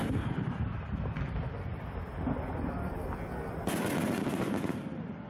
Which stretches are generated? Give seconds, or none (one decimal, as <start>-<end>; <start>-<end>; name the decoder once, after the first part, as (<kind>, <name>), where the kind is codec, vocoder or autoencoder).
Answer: none